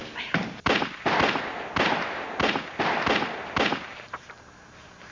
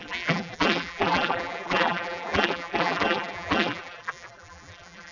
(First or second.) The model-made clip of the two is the second